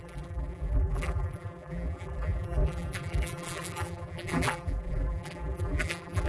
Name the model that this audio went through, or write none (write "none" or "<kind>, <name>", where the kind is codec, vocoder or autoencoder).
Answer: vocoder, BigVGAN v2